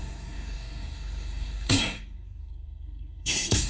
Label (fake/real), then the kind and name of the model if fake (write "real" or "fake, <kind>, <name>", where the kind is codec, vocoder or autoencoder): fake, codec, SNAC